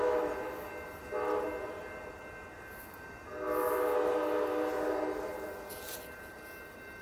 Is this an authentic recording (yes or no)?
yes